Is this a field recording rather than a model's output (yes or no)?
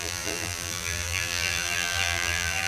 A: no